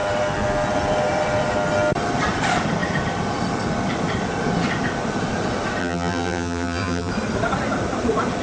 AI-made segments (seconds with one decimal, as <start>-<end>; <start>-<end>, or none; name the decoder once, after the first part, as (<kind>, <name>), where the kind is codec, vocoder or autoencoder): 5.8-7.1 (vocoder, BigVGAN v2)